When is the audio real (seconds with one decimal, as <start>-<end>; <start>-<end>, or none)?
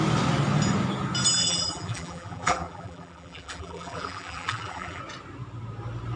0.0-1.4; 5.0-6.2